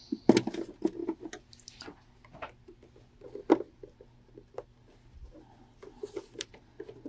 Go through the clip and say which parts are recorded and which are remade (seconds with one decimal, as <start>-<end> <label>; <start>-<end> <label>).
0.0-7.1 recorded